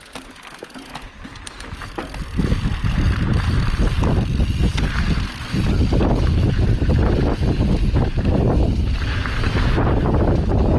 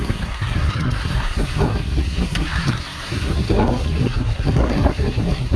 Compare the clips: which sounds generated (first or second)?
second